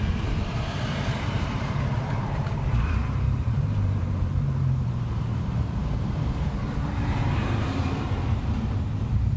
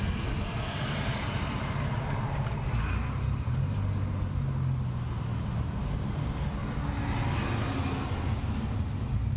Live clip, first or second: second